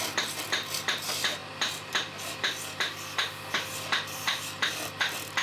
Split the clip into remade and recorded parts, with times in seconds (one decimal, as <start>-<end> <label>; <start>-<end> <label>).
0.0-5.4 recorded